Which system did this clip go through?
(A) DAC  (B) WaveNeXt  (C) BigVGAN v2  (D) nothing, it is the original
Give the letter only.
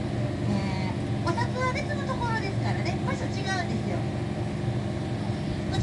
D